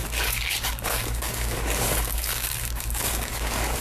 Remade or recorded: remade